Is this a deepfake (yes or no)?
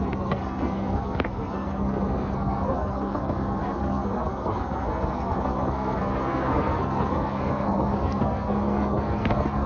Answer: yes